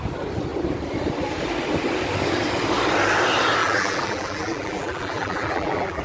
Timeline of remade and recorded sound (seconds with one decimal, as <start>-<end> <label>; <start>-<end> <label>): 0.0-3.6 recorded; 3.6-6.0 remade